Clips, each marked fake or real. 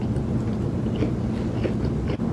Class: real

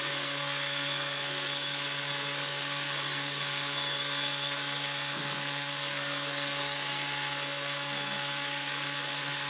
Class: fake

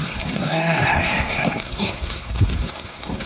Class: fake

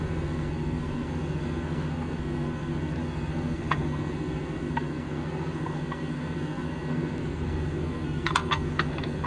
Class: fake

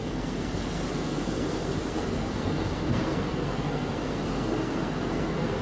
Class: fake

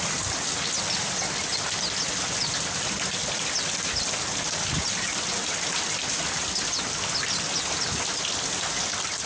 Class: real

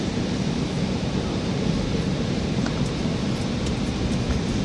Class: real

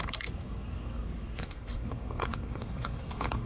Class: fake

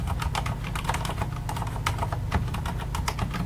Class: real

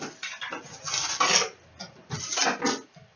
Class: real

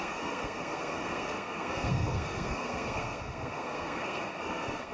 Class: fake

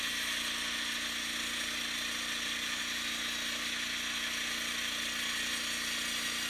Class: real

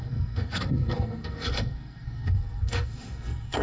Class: fake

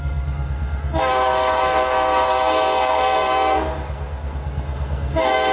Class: fake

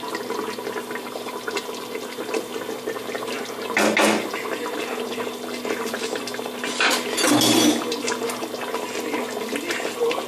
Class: real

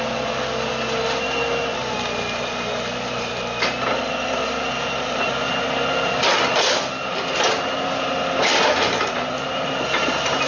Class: real